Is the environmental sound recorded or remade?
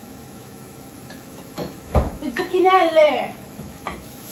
remade